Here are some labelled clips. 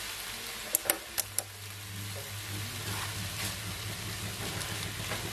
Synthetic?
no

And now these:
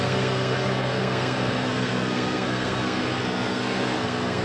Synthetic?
yes